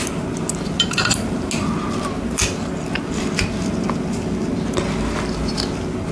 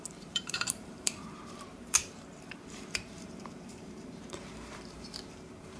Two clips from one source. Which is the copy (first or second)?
second